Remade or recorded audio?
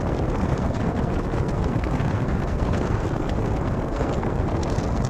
remade